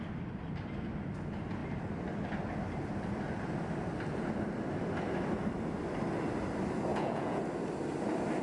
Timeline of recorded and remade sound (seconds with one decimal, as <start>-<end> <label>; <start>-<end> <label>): 0.0-6.9 recorded; 6.9-7.4 remade; 7.4-8.4 recorded